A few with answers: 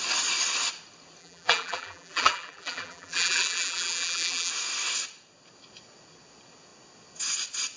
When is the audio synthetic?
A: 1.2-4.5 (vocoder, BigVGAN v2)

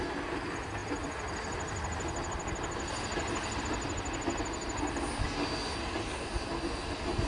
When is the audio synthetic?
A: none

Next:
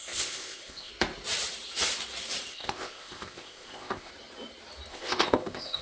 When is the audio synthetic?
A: 0.0-0.9 (codec, ZipCodec); 2.5-4.1; 4.9-5.8

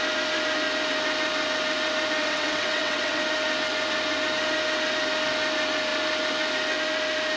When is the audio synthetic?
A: 2.2-3.2 (vocoder, WaveNeXt)